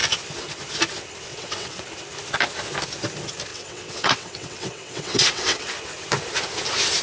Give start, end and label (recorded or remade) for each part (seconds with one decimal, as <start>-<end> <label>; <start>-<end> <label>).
0.0-1.3 recorded; 1.3-1.8 remade; 1.8-3.5 recorded; 3.5-5.7 remade; 5.7-7.0 recorded